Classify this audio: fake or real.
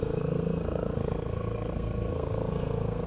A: fake